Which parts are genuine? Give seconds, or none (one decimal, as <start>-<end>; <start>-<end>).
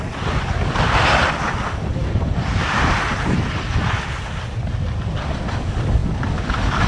0.0-2.0; 3.4-6.9